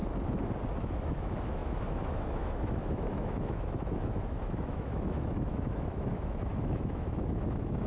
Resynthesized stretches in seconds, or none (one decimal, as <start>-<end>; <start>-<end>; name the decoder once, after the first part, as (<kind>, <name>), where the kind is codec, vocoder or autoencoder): 0.8-7.9 (autoencoder, DAC-VAE)